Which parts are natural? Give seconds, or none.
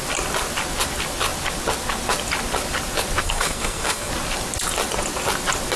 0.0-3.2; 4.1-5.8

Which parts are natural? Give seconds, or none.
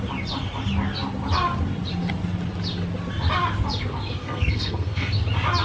0.0-4.2; 5.1-5.6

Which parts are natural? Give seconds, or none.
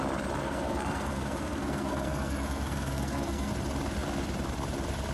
0.0-0.4; 3.5-5.1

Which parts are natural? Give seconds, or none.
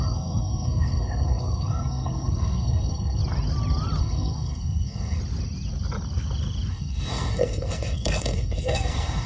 3.2-4.0; 5.2-6.7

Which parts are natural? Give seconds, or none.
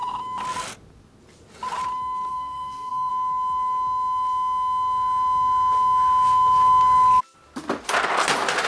0.0-2.3; 3.1-8.7